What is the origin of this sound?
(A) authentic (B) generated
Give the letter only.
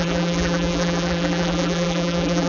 B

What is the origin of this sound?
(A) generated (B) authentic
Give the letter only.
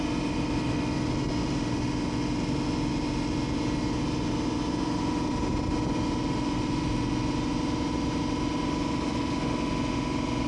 B